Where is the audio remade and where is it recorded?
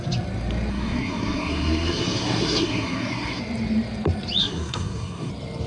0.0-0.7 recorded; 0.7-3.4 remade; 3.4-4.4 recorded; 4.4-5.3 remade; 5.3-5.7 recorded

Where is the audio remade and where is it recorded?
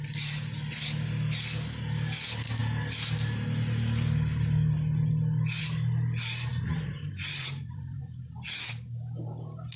0.0-6.5 recorded; 6.5-8.0 remade; 8.0-9.8 recorded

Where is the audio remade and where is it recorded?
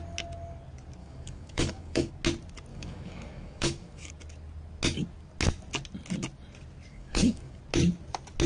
0.0-1.0 recorded; 1.0-2.1 remade; 2.1-2.7 recorded; 2.7-4.1 remade; 4.1-6.9 recorded; 6.9-7.6 remade; 7.6-8.5 recorded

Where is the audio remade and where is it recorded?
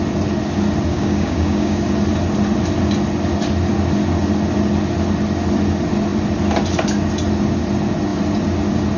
0.0-0.9 recorded; 0.9-1.8 remade; 1.8-9.0 recorded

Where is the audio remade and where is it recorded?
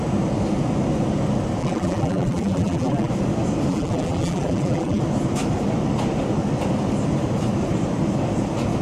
0.0-1.6 recorded; 1.6-3.1 remade; 3.1-3.7 recorded; 3.7-5.0 remade; 5.0-8.8 recorded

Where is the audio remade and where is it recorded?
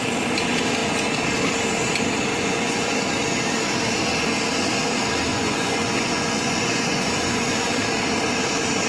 0.0-2.3 recorded; 2.3-3.0 remade; 3.0-5.3 recorded; 5.3-7.7 remade; 7.7-8.9 recorded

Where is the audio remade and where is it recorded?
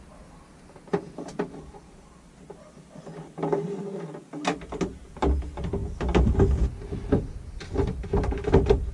0.0-8.9 recorded